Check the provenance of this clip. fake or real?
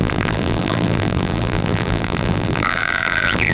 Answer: fake